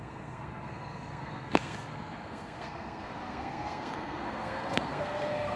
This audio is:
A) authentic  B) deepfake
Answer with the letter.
B